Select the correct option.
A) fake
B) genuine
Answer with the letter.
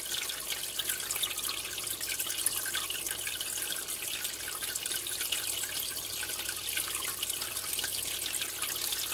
B